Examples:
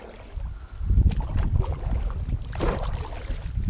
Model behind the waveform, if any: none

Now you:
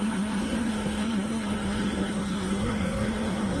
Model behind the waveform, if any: codec, SNAC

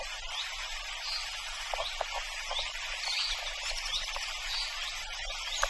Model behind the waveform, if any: none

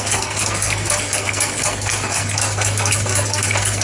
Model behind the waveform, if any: codec, SNAC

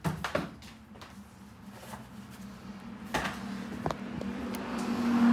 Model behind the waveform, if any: none